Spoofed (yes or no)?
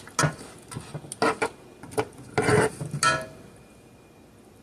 no